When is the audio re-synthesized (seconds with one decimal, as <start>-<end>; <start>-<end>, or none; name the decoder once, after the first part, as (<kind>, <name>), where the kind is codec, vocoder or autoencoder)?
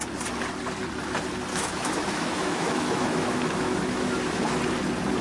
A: 1.5-4.6 (autoencoder, DAC-VAE)